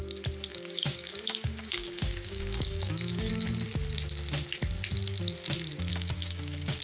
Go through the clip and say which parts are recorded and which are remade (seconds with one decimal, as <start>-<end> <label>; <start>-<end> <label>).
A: 0.0-0.5 recorded; 0.5-3.3 remade; 3.3-5.9 recorded; 5.9-6.8 remade